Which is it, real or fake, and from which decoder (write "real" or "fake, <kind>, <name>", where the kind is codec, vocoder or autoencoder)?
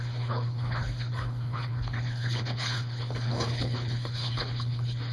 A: fake, codec, HILCodec